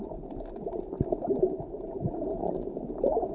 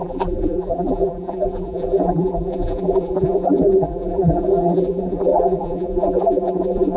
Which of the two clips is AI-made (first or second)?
second